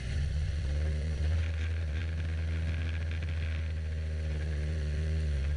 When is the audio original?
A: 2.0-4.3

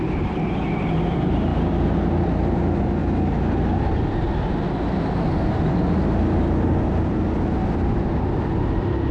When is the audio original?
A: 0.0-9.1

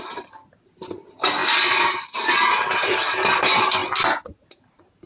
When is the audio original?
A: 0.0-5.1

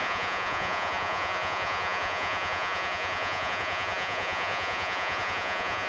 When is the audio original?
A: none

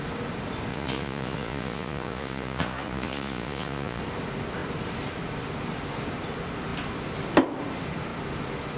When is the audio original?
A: 0.0-0.7; 4.0-8.8

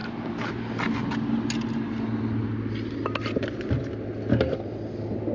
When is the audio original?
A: 0.0-5.3

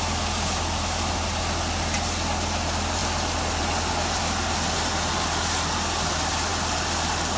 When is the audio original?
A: 0.0-7.4

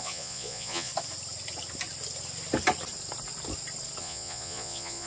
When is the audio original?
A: 0.9-4.0